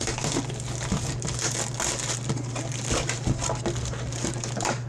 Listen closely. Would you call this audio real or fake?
fake